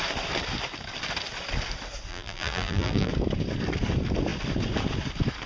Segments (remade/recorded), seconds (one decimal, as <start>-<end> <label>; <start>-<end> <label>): 0.0-2.1 recorded; 2.1-3.1 remade; 3.1-5.5 recorded